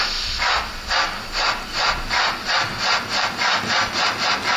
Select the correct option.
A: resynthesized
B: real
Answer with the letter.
B